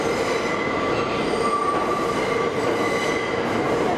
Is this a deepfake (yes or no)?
no